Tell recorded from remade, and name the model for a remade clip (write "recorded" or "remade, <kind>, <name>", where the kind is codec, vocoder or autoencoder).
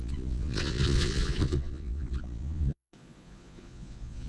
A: remade, vocoder, Vocos